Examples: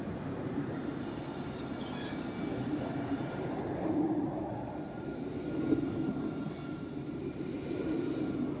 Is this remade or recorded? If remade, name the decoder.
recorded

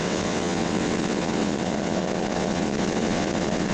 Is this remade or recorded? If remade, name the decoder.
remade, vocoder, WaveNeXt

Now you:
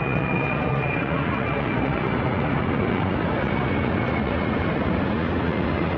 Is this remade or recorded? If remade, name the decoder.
remade, vocoder, Vocos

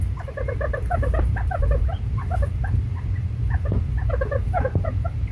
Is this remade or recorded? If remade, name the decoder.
remade, vocoder, BigVGAN v2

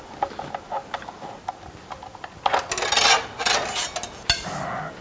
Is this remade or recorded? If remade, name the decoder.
recorded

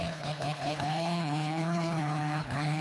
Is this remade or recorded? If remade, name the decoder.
remade, codec, HILCodec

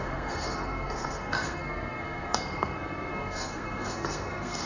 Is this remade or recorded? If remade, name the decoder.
remade, codec, SNAC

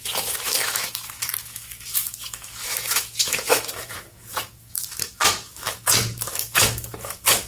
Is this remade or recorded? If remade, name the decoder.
remade, autoencoder, DAC-VAE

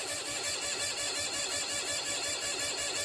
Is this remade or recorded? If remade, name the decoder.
recorded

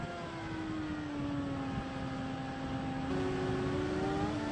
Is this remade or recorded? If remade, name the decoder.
recorded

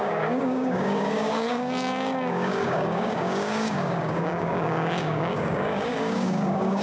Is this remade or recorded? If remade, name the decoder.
remade, codec, DAC